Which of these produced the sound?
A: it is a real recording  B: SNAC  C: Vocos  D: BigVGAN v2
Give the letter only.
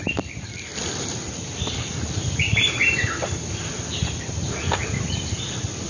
D